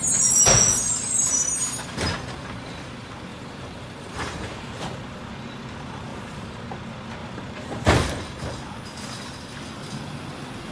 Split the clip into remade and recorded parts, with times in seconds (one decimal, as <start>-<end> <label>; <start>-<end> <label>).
0.0-3.3 recorded; 3.3-5.3 remade; 5.3-6.1 recorded; 6.1-6.7 remade; 6.7-7.2 recorded; 7.2-8.2 remade; 8.2-10.7 recorded